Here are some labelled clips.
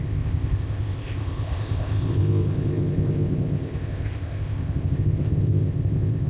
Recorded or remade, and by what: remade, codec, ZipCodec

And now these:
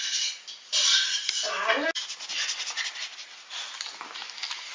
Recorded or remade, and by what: recorded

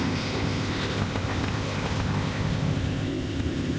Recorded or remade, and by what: remade, codec, ZipCodec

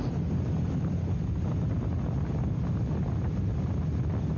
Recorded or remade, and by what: recorded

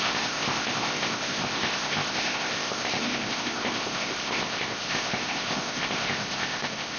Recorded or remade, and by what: remade, codec, ZipCodec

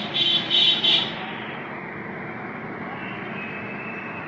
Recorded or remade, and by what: recorded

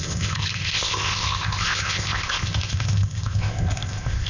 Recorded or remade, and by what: remade, codec, ZipCodec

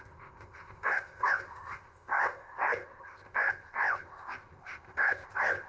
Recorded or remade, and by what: remade, codec, ZipCodec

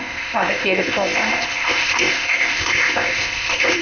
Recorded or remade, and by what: remade, codec, ZipCodec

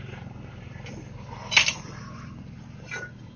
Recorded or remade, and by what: recorded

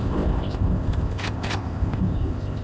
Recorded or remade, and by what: remade, codec, ZipCodec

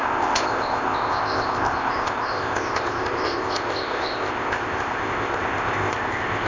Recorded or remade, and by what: remade, codec, ZipCodec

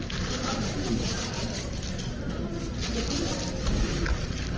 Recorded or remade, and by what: recorded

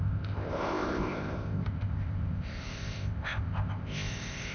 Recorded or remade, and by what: remade, codec, ZipCodec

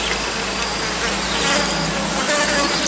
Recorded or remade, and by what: recorded